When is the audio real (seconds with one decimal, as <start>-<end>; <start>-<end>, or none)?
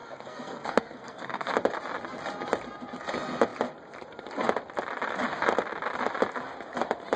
1.5-7.2